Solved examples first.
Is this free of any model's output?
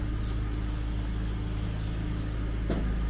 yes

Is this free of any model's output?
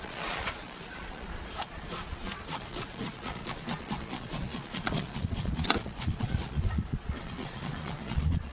no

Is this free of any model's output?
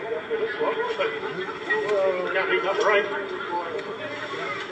yes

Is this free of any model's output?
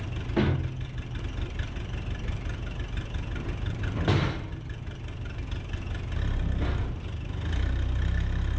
yes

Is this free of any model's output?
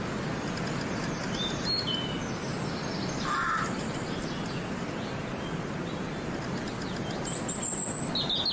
yes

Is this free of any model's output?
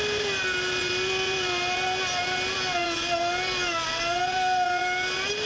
yes